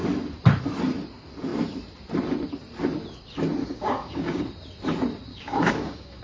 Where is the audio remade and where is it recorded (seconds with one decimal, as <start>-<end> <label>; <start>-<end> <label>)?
0.0-3.6 recorded; 3.6-4.4 remade; 4.4-5.3 recorded; 5.3-6.2 remade